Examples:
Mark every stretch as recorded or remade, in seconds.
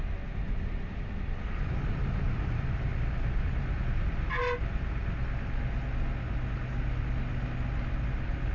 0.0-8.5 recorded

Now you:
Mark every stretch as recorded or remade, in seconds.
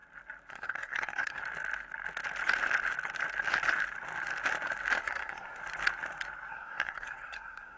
0.0-0.5 recorded; 0.5-1.4 remade; 1.4-5.0 recorded; 5.0-5.6 remade; 5.6-6.5 recorded; 6.5-7.8 remade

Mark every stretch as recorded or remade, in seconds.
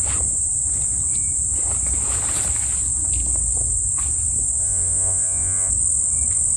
0.0-4.6 recorded; 4.6-5.7 remade; 5.7-6.6 recorded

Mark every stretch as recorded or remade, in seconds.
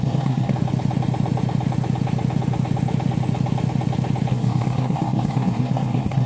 0.0-0.5 remade; 0.5-4.3 recorded; 4.3-6.3 remade